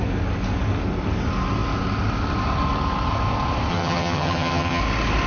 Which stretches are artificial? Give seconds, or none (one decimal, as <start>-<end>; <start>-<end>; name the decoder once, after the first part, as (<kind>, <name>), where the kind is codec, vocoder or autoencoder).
3.7-4.8 (vocoder, HiFi-GAN)